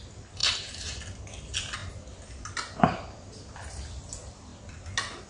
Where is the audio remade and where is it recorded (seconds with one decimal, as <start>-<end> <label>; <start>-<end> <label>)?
0.0-0.4 recorded; 0.4-1.0 remade; 1.0-5.3 recorded